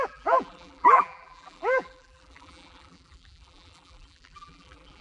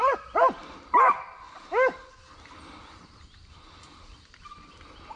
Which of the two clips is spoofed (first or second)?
first